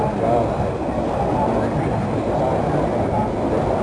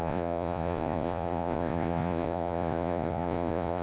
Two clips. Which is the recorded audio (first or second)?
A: first